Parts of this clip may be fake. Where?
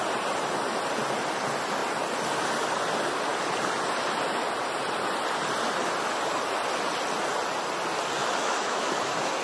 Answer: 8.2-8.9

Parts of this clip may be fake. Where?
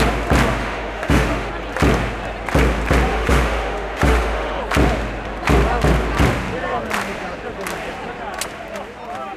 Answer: 0.6-1.5; 3.1-4.6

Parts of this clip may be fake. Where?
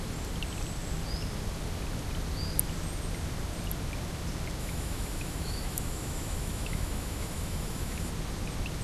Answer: 4.6-8.1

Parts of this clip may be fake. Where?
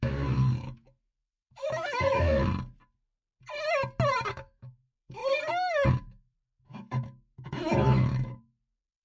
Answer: 0.0-2.5; 4.3-5.2; 5.9-9.0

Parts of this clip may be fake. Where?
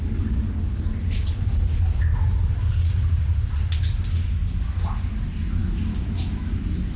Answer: 5.6-6.5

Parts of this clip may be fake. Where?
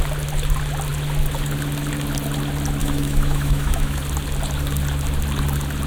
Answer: 2.8-4.0